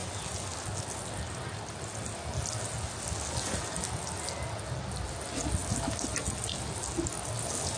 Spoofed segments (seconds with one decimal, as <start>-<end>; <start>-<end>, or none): none